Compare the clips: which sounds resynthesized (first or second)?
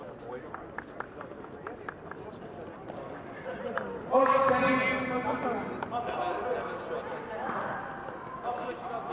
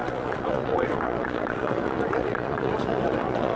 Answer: second